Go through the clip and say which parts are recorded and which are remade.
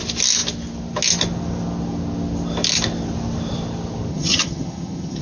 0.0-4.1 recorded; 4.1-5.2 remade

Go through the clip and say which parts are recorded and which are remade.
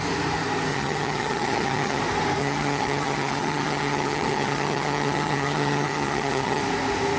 0.0-0.7 recorded; 0.7-2.0 remade; 2.0-2.4 recorded; 2.4-6.6 remade; 6.6-7.2 recorded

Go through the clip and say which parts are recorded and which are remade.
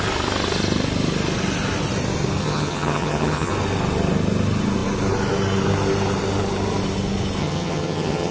0.0-2.4 recorded; 2.4-3.5 remade; 3.5-7.4 recorded; 7.4-8.3 remade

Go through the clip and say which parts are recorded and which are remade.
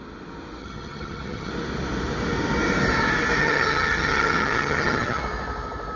0.0-0.6 recorded; 0.6-1.5 remade; 1.5-3.4 recorded; 3.4-5.2 remade; 5.2-6.0 recorded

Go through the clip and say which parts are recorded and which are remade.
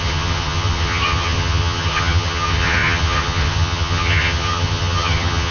0.0-5.5 remade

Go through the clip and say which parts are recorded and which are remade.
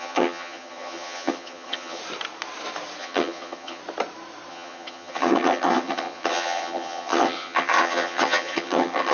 0.0-2.0 remade; 2.0-3.0 recorded; 3.0-3.8 remade; 3.8-4.5 recorded; 4.5-9.1 remade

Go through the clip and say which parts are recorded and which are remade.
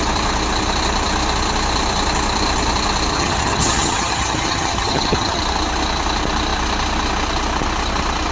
0.0-3.1 recorded; 3.1-5.4 remade; 5.4-8.3 recorded